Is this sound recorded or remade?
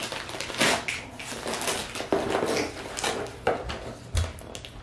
recorded